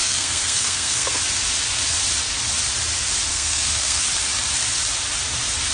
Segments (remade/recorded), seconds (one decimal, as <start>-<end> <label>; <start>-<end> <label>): 0.0-1.2 remade; 1.2-3.3 recorded; 3.3-4.0 remade; 4.0-5.7 recorded